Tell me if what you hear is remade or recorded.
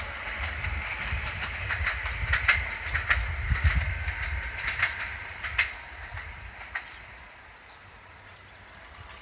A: recorded